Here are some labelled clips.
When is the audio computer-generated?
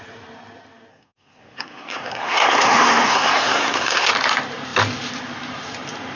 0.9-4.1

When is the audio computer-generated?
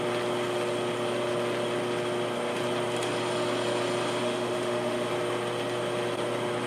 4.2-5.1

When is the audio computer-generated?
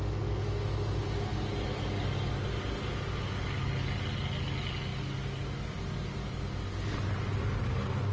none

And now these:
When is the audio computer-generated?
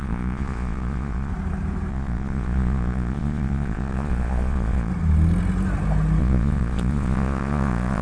0.0-1.3; 1.9-4.9; 6.2-8.0